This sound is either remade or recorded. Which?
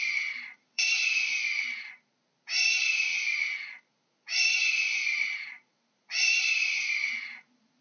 remade